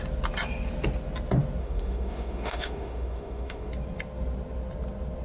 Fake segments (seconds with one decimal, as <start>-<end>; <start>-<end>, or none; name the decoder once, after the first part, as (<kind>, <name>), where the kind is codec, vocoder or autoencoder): 1.6-3.7 (autoencoder, DAC-VAE)